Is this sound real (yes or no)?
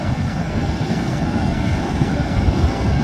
no